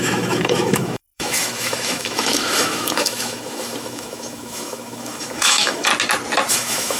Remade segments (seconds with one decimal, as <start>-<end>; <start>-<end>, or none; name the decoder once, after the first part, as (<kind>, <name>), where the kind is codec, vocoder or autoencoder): 0.0-5.9 (autoencoder, DAC-VAE); 6.5-7.0